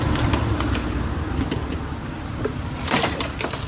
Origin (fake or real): real